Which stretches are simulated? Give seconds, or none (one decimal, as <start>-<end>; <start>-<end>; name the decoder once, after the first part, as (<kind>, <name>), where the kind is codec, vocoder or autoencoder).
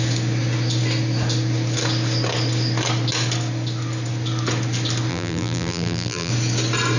5.1-6.3 (vocoder, BigVGAN v2)